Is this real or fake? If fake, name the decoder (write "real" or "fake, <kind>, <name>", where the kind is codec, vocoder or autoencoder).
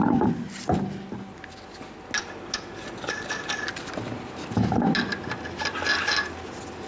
real